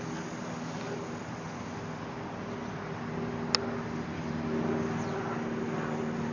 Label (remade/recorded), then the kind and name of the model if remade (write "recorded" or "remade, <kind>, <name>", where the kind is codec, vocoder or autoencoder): recorded